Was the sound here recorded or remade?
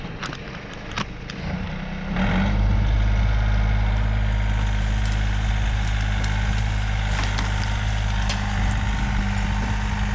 recorded